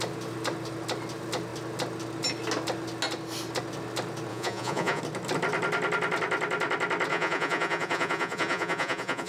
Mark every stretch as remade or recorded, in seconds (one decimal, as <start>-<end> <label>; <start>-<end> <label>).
0.0-4.3 recorded; 4.3-5.0 remade; 5.0-7.1 recorded; 7.1-9.3 remade